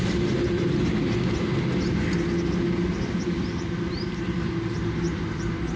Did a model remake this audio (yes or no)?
no